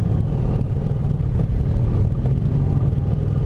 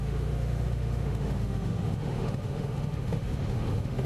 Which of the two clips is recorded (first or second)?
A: first